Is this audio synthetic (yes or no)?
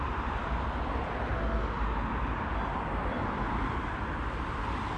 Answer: no